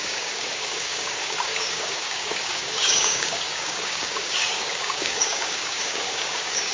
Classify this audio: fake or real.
fake